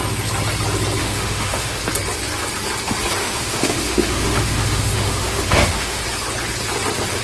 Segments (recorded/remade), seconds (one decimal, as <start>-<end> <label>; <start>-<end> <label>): 0.0-1.0 recorded; 1.0-1.8 remade; 1.8-3.2 recorded; 3.2-6.0 remade; 6.0-7.2 recorded